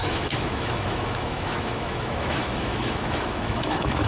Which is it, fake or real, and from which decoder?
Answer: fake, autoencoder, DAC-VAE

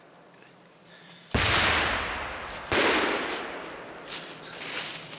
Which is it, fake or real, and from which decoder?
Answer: real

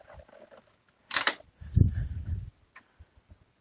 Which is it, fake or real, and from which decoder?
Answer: real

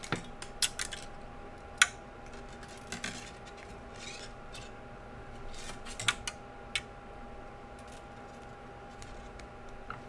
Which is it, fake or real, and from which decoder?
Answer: real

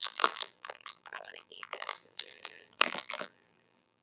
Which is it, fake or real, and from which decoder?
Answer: fake, vocoder, BigVGAN v2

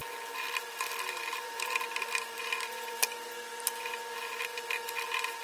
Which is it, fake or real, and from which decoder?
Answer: real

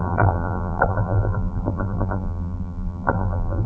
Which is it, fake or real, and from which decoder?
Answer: fake, vocoder, BigVGAN v2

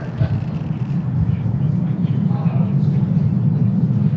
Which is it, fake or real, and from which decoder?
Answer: real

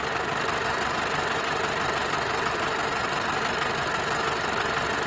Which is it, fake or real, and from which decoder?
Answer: real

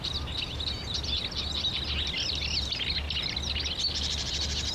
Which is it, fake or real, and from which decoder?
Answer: real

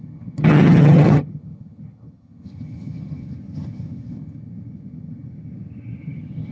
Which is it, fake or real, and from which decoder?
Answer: fake, vocoder, HiFi-GAN